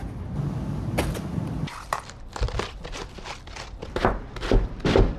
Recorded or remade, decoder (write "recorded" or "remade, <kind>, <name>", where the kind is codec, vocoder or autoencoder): remade, vocoder, BigVGAN v2